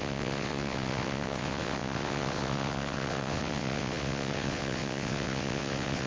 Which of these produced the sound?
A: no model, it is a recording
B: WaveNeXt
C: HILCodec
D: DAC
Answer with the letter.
B